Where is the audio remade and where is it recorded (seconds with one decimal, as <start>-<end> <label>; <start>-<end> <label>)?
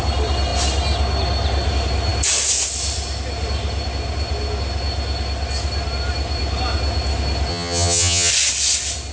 0.0-7.5 recorded; 7.5-8.3 remade; 8.3-9.1 recorded